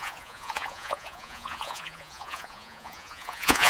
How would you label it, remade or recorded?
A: remade